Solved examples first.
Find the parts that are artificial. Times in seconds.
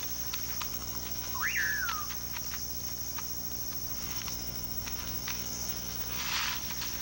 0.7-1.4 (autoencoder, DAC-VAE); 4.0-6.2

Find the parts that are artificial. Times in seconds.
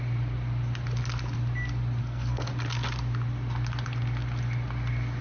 2.0-2.5 (codec, SNAC)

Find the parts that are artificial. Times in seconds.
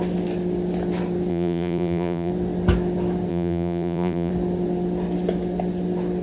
1.3-2.3 (vocoder, BigVGAN v2); 3.3-4.3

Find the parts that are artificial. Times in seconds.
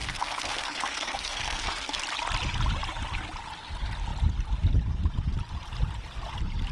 0.0-2.0 (codec, SNAC)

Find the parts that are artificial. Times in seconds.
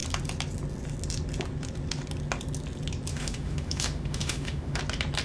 3.1-4.8 (autoencoder, DAC-VAE)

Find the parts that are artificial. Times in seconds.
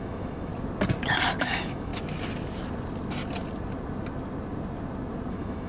0.0-0.5 (autoencoder, DAC-VAE); 1.4-1.9; 5.3-5.7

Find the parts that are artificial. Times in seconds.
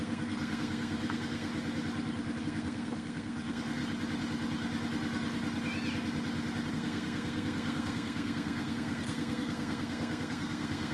0.0-1.5 (codec, SNAC); 2.4-3.8; 6.7-10.9